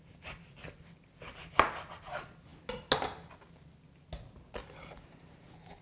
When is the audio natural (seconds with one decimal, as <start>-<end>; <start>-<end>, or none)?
0.0-5.8